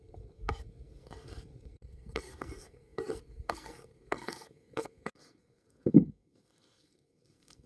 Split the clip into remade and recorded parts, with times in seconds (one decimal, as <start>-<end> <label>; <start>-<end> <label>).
0.0-7.7 remade